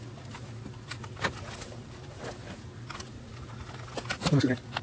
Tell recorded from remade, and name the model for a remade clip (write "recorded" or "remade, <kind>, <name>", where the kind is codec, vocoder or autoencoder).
recorded